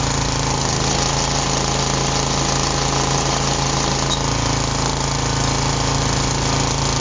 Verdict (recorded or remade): recorded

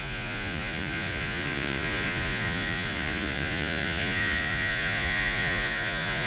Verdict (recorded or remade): remade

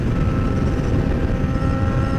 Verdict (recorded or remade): recorded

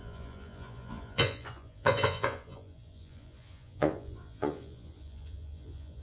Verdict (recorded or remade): remade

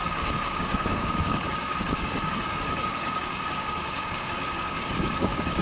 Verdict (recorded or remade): remade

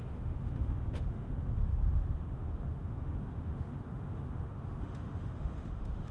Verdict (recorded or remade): remade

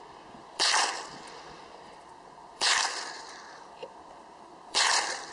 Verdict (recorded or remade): remade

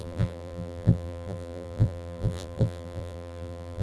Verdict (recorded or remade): remade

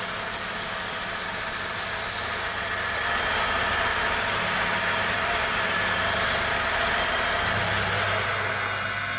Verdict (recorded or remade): recorded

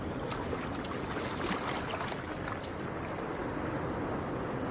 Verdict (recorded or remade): recorded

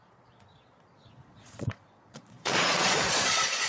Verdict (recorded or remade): remade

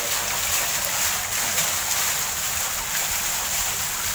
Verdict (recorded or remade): recorded